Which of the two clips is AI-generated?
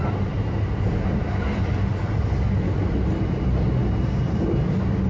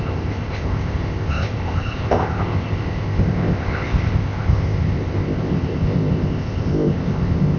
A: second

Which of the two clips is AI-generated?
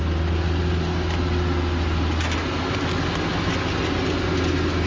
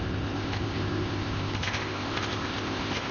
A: second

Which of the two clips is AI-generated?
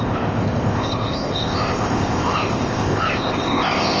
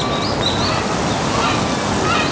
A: first